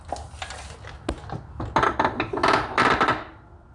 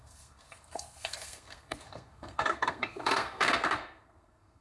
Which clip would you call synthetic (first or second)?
second